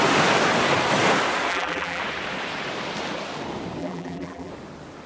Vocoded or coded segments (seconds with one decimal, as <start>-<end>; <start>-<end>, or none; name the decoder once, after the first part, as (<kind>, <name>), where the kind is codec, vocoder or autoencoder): 1.5-2.0 (vocoder, BigVGAN v2); 3.8-4.5